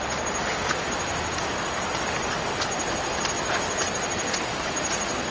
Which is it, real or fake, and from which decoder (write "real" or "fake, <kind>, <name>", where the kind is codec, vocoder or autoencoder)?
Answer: real